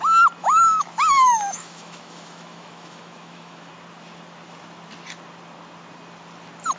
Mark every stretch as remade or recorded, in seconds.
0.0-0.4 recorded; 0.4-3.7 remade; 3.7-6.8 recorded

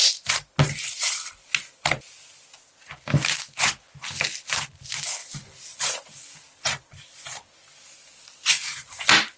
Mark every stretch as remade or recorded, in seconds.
0.0-9.4 recorded